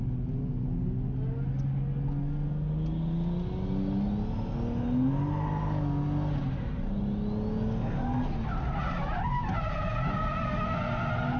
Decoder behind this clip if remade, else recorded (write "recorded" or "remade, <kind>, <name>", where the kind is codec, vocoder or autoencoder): recorded